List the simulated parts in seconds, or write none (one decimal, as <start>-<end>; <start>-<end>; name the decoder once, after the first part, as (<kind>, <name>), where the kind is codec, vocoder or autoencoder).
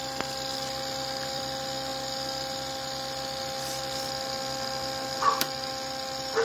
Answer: none